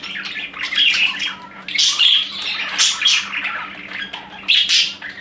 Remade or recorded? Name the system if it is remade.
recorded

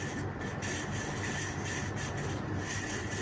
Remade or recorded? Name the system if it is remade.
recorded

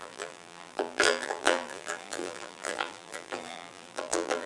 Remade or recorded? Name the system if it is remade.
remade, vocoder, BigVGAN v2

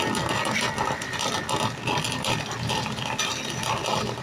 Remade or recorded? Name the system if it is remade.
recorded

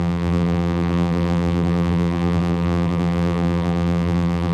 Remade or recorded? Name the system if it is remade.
remade, vocoder, BigVGAN v2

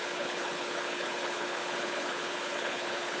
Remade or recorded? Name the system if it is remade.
remade, codec, HILCodec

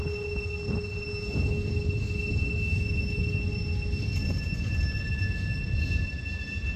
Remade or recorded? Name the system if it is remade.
recorded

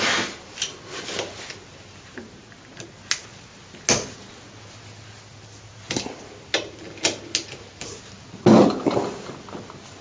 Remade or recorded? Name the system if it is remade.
recorded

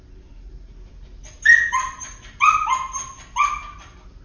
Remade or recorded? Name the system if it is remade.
recorded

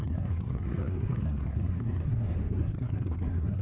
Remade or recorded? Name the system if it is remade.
remade, codec, SNAC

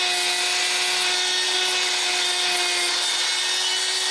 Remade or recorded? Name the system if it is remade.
recorded